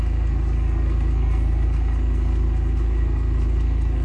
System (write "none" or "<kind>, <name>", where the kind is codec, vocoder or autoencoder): codec, SNAC